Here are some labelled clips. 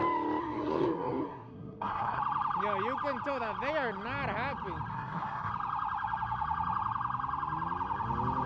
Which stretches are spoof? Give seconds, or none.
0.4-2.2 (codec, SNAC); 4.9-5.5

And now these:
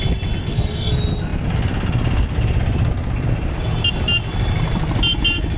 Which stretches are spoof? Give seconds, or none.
0.4-0.9 (codec, SNAC)

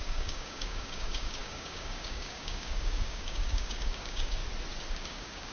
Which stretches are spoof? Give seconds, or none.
0.0-4.4 (codec, DAC); 4.9-5.5

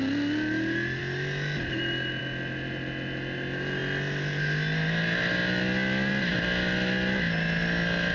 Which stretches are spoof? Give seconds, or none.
none

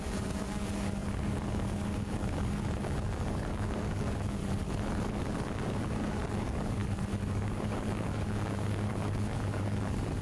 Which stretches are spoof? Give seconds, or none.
0.0-4.4 (codec, DAC); 5.2-6.8; 7.3-10.2

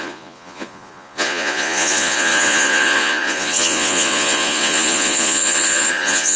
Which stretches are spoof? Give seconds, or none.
0.0-6.4 (vocoder, Vocos)

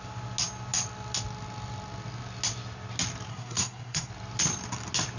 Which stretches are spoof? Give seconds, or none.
3.3-4.1 (codec, SNAC)

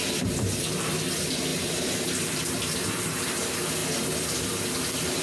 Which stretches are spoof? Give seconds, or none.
0.0-5.2 (vocoder, BigVGAN v2)